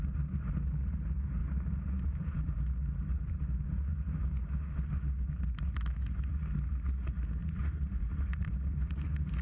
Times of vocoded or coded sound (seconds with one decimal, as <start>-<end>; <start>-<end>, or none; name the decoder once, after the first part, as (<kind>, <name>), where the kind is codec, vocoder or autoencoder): 1.4-3.3 (vocoder, BigVGAN v2); 7.4-9.4